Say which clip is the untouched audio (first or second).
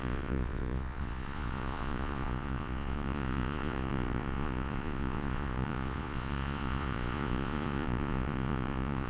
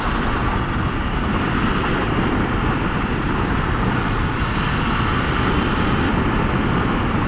second